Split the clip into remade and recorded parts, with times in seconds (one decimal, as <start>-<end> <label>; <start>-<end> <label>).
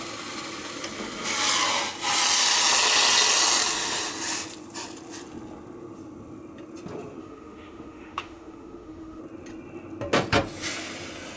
0.0-7.2 recorded; 7.2-9.2 remade; 9.2-11.4 recorded